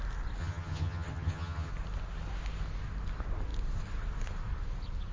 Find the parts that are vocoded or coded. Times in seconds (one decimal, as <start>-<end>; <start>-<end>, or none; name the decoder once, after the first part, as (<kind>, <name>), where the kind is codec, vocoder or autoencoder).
0.4-1.7 (vocoder, HiFi-GAN)